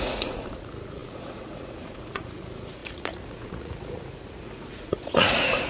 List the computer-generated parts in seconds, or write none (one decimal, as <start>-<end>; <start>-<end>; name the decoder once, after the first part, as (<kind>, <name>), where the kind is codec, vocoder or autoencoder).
0.0-5.7 (vocoder, Vocos)